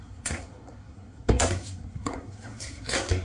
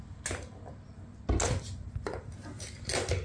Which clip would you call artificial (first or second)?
first